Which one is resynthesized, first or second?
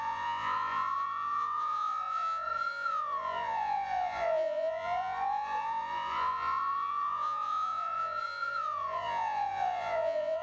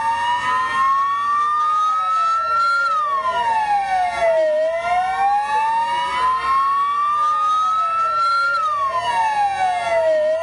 first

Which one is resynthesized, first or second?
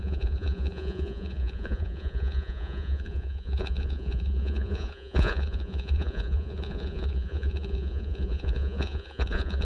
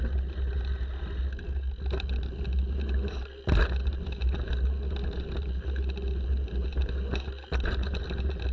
first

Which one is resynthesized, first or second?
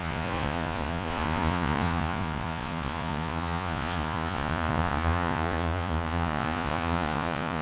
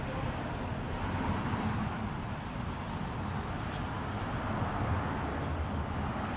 first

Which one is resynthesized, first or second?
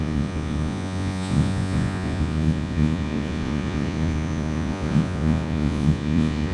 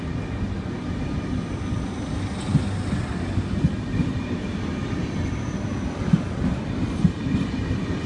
first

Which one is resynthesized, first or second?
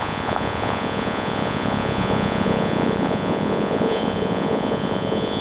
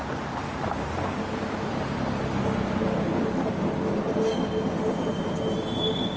first